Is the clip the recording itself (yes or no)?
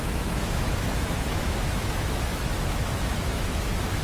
no